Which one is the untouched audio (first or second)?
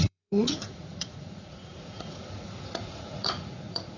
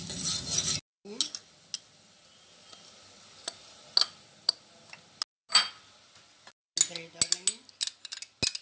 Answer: second